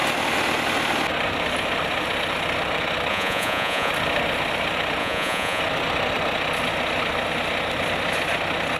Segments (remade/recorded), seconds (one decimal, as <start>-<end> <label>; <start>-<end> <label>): 0.0-3.1 recorded; 3.1-3.9 remade; 3.9-5.0 recorded; 5.0-5.6 remade; 5.6-8.8 recorded